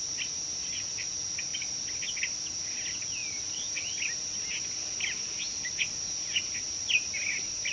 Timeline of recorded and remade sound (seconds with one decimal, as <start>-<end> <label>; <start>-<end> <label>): 0.0-7.7 recorded